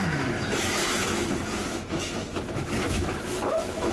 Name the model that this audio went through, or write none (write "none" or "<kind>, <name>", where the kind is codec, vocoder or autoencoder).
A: autoencoder, DAC-VAE